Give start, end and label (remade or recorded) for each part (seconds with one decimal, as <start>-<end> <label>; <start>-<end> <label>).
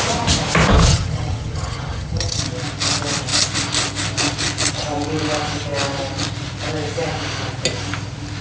0.0-0.9 recorded; 0.9-2.4 remade; 2.4-8.4 recorded